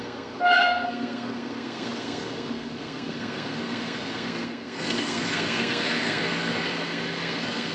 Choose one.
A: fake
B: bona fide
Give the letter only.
A